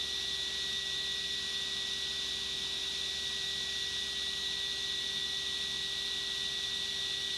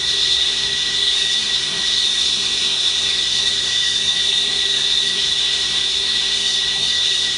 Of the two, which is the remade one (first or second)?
second